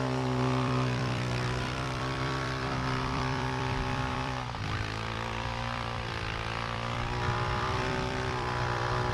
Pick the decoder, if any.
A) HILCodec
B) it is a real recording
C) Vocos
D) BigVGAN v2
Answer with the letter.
D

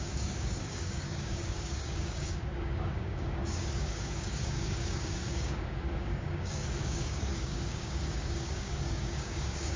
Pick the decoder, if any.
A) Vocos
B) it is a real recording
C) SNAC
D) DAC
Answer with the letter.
D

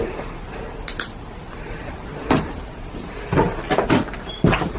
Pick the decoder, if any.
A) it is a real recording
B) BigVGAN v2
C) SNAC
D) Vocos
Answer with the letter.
A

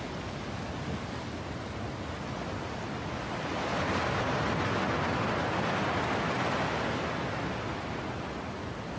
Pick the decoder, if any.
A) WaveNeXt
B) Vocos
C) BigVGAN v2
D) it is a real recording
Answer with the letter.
D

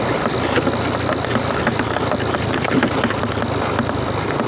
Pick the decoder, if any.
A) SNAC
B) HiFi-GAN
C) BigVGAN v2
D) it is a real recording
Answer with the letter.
D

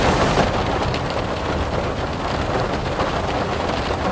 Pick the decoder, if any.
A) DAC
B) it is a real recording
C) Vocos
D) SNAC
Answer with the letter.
B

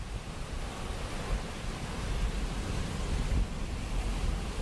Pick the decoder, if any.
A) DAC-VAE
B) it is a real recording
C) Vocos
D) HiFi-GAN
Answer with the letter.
B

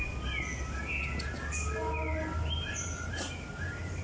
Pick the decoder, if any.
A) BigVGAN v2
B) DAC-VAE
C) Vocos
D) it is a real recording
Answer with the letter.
D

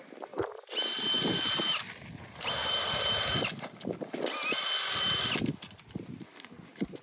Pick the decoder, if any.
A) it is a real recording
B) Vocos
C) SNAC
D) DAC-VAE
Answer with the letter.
A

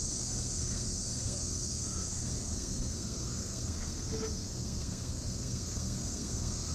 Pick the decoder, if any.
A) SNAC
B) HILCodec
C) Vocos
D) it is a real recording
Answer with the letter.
A